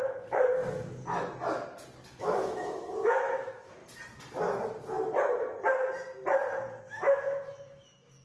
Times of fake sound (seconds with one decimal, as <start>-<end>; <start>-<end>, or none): 0.0-0.6; 2.2-3.8; 6.8-8.2

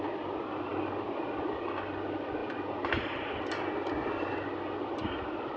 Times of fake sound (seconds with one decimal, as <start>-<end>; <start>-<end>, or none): none